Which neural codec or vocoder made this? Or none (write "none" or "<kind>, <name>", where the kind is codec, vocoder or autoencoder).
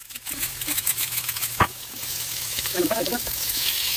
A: autoencoder, DAC-VAE